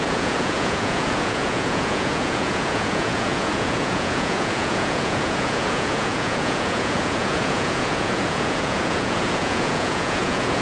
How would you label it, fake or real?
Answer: fake